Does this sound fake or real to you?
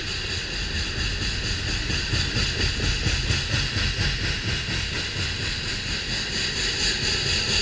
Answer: real